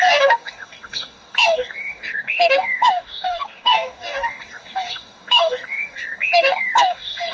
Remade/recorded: remade